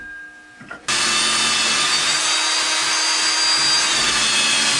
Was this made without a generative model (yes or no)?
yes